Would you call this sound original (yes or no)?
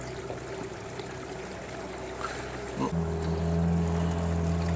yes